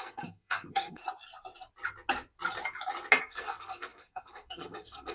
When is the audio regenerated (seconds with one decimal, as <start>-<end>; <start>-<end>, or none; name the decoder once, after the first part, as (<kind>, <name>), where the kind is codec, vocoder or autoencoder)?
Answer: 0.0-1.0 (codec, SNAC); 3.2-5.1